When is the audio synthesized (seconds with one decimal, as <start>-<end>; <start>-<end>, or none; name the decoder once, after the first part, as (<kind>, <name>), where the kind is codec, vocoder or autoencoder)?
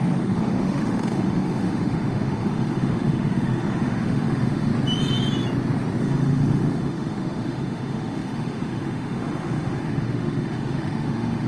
0.0-4.7 (autoencoder, DAC-VAE); 6.0-11.5